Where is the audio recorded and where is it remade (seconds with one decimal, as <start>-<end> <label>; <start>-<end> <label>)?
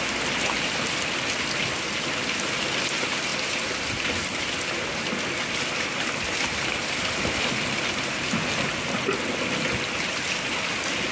0.0-11.1 recorded